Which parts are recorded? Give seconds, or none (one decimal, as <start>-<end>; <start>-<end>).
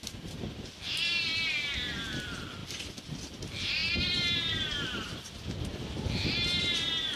0.0-2.6; 3.2-7.2